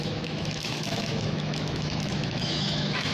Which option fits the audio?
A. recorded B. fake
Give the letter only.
B